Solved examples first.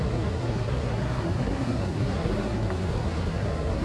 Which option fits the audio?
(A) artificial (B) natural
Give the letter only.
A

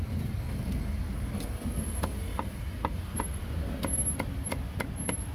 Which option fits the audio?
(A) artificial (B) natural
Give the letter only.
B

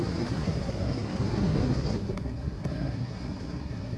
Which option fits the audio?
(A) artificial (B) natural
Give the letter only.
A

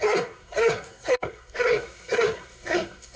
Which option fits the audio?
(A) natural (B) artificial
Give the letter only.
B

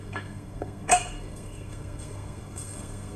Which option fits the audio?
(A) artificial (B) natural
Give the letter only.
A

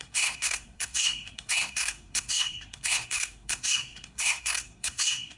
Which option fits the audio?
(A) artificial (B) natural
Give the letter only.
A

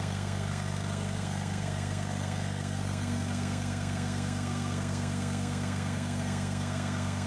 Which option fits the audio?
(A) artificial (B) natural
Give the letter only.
A